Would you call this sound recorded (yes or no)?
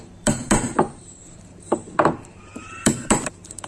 no